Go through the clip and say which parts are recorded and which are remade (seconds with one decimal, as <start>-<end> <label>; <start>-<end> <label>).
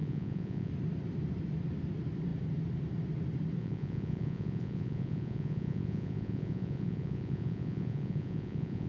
0.0-0.7 remade; 0.7-3.6 recorded; 3.6-8.9 remade